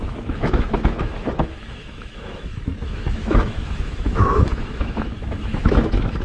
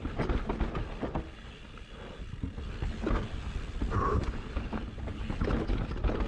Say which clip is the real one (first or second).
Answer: second